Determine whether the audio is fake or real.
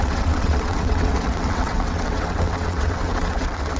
fake